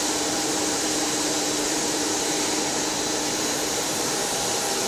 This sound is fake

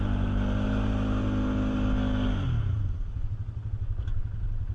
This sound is real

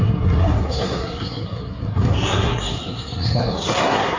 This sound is fake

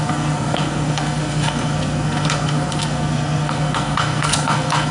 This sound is fake